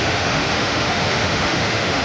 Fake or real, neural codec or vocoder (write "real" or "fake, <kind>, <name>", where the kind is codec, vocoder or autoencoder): fake, autoencoder, DAC-VAE